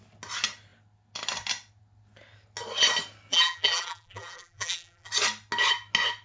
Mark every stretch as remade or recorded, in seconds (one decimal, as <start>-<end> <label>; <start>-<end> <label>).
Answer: 0.0-3.3 recorded; 3.3-5.1 remade; 5.1-6.2 recorded